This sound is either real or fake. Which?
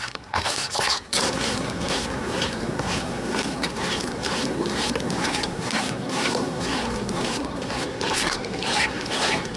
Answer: fake